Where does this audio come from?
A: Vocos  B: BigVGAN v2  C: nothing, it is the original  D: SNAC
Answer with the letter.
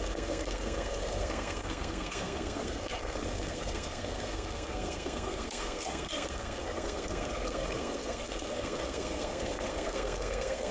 D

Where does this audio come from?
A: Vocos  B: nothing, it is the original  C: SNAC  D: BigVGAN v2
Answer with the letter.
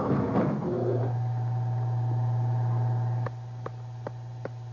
B